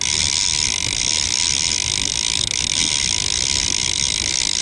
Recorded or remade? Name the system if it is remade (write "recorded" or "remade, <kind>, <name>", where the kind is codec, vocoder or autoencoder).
recorded